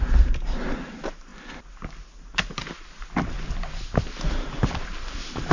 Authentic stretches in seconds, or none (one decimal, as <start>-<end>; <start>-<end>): 1.3-4.5